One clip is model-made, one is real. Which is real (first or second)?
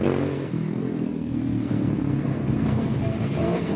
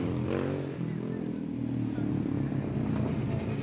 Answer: second